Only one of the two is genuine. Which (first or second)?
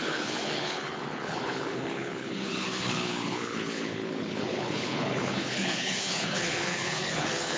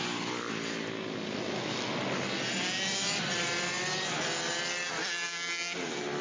second